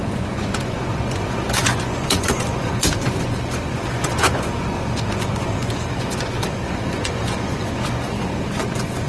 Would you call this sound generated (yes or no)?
yes